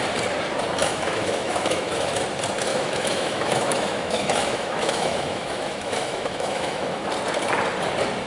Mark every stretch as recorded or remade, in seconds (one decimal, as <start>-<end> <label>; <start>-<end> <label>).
0.0-0.8 recorded; 0.8-2.2 remade; 2.2-2.7 recorded; 2.7-7.1 remade; 7.1-8.3 recorded